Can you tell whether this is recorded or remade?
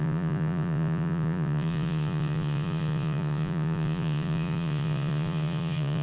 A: remade